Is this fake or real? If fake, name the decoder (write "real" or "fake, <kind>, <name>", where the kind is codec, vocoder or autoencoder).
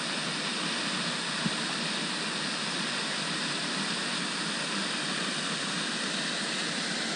real